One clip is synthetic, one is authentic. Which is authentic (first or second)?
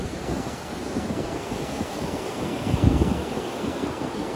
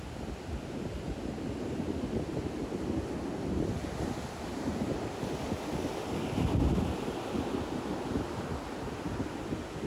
second